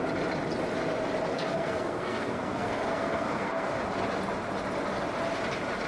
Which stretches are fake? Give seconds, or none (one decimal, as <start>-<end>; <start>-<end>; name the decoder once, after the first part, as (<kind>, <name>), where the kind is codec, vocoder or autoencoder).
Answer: 1.3-3.8 (codec, SNAC)